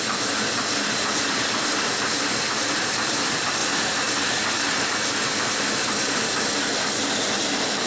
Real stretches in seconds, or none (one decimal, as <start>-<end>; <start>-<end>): 3.6-7.3